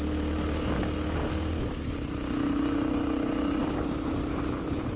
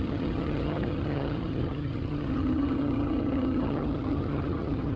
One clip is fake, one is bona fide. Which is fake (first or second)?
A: second